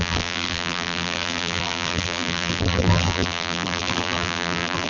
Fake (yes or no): yes